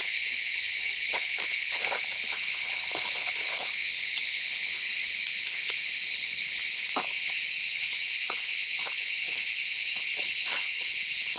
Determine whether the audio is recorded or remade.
remade